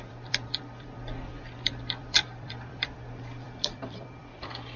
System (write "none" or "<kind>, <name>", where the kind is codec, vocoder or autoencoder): vocoder, BigVGAN v2